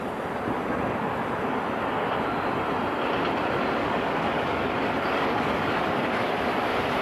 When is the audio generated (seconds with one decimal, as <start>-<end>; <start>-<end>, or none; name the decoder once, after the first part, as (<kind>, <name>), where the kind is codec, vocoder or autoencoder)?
3.8-6.5 (codec, DAC)

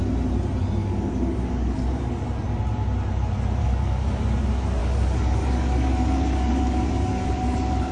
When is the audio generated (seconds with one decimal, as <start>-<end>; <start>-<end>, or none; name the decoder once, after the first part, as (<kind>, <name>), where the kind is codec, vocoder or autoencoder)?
0.8-2.0 (codec, DAC); 3.6-4.2; 4.8-7.9

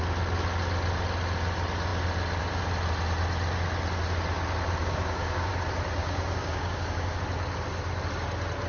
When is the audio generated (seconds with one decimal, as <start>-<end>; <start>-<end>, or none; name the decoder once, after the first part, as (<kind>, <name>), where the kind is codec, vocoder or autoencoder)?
4.8-5.5 (codec, DAC); 6.0-7.2

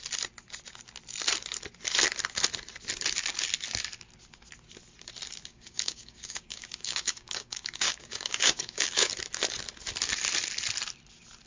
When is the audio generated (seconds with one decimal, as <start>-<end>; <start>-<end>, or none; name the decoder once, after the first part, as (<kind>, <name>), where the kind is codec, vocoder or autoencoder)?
5.5-9.1 (codec, DAC)

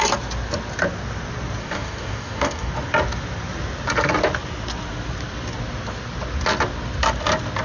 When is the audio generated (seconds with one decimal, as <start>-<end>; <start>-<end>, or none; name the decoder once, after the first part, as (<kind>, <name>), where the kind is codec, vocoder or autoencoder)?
1.6-2.7 (codec, DAC)